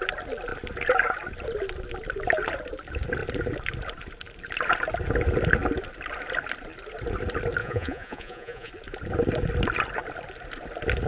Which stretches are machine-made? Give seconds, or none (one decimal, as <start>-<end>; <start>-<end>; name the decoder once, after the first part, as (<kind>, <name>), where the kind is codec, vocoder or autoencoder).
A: 7.6-8.7 (vocoder, Vocos)